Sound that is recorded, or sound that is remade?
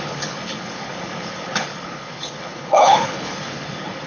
remade